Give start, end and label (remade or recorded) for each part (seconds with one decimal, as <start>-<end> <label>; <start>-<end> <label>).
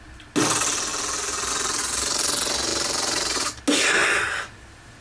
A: 0.0-2.7 recorded; 2.7-3.6 remade; 3.6-4.0 recorded; 4.0-4.6 remade; 4.6-5.0 recorded